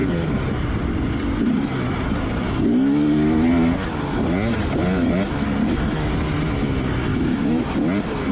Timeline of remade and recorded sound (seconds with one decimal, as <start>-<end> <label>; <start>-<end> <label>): 0.0-7.1 recorded; 7.1-7.7 remade; 7.7-8.3 recorded